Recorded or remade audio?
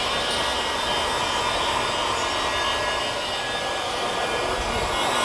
recorded